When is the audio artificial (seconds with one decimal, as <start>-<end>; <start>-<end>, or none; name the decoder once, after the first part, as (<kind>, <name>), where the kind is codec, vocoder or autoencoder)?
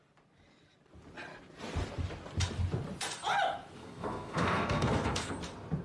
3.8-5.3 (codec, SNAC)